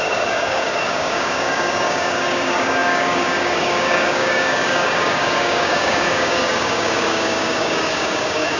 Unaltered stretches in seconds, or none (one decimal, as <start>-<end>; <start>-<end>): none